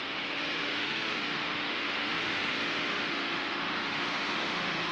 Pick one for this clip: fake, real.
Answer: fake